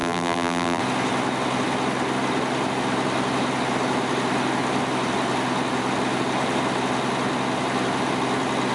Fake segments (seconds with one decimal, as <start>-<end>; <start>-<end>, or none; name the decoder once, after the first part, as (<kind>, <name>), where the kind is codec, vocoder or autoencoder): 0.0-0.8 (vocoder, BigVGAN v2)